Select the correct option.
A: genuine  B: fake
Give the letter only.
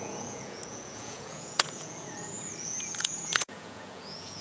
B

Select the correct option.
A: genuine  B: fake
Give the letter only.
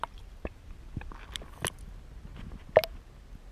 A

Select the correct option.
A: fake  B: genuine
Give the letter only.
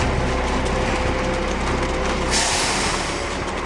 B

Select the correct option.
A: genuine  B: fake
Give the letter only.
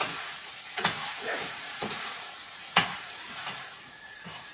B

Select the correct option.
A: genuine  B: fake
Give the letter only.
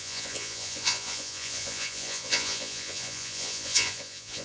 B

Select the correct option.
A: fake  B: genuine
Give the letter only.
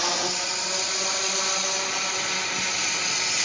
B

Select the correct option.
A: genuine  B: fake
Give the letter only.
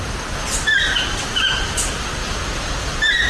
A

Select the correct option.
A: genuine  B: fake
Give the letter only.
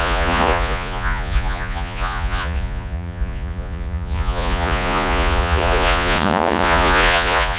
B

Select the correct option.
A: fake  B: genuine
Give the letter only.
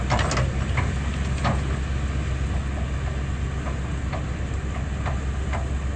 B